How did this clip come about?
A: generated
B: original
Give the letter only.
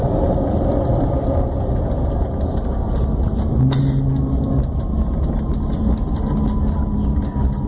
B